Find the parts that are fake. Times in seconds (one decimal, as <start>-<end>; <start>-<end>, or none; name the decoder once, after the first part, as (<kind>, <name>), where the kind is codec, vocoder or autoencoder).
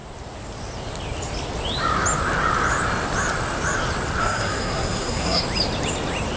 4.2-5.4 (codec, SNAC)